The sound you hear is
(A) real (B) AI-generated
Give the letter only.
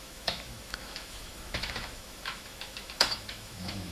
B